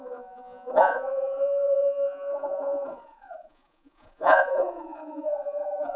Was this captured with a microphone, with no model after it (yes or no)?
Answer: no